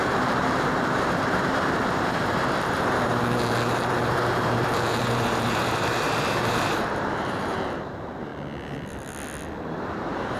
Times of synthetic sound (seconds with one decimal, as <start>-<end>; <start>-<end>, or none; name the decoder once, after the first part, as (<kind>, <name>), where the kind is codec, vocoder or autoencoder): 0.0-8.3 (vocoder, BigVGAN v2); 9.6-10.4